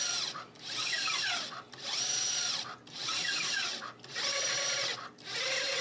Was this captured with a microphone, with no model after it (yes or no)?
yes